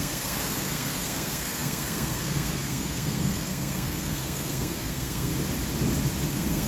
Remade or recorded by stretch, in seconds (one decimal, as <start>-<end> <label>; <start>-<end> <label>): 0.0-5.3 remade; 5.3-6.3 recorded; 6.3-6.7 remade